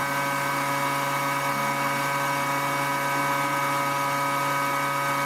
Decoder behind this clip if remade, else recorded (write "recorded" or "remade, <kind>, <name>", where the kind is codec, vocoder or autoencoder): recorded